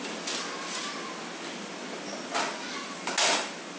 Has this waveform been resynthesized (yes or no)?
no